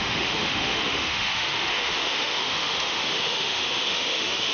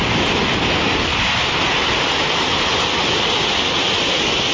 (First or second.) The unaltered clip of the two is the second